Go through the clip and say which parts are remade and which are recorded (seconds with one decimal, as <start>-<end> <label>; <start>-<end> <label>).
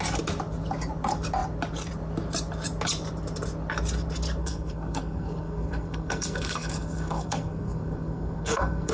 0.0-4.4 recorded; 4.4-8.9 remade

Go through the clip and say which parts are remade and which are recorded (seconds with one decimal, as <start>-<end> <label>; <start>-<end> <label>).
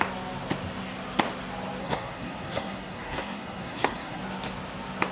0.0-1.8 recorded; 1.8-4.2 remade; 4.2-5.1 recorded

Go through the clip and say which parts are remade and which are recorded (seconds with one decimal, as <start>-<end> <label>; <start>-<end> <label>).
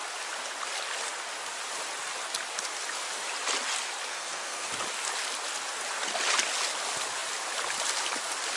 0.0-4.1 recorded; 4.1-4.7 remade; 4.7-8.6 recorded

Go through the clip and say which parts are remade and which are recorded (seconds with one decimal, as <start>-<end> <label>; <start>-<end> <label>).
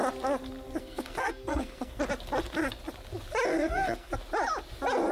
0.0-0.8 recorded; 0.8-2.0 remade; 2.0-3.5 recorded; 3.5-4.1 remade; 4.1-5.1 recorded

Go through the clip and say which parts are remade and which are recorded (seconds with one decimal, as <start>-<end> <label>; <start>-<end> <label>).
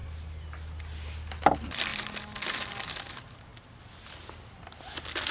0.0-5.3 recorded